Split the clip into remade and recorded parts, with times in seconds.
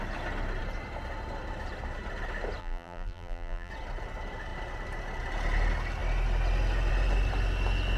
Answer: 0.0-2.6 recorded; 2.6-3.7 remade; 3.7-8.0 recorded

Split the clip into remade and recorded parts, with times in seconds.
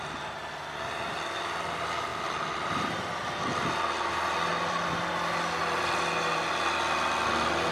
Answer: 0.0-2.1 recorded; 2.1-4.1 remade; 4.1-4.5 recorded; 4.5-5.1 remade; 5.1-5.6 recorded; 5.6-6.8 remade; 6.8-7.7 recorded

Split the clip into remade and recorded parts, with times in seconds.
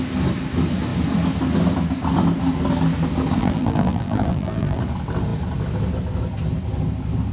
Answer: 0.0-3.4 recorded; 3.4-4.8 remade; 4.8-7.3 recorded